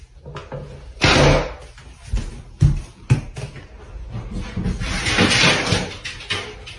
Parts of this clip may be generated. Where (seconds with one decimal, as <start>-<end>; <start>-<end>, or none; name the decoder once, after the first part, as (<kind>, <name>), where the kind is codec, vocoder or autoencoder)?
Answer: none